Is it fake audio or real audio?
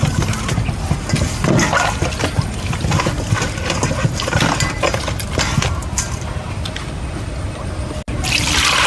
real